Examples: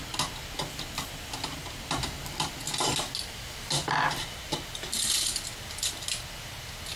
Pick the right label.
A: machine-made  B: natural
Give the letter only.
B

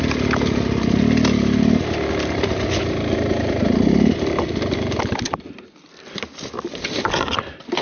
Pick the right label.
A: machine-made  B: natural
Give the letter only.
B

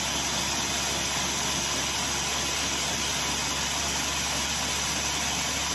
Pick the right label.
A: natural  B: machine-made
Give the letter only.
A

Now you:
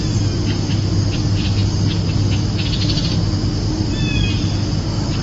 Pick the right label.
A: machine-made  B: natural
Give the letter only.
B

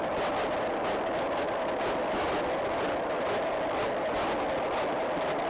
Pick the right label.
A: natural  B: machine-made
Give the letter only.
A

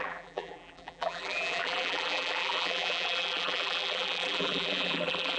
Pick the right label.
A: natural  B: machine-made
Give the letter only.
B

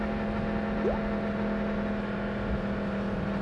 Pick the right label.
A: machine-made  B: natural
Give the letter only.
B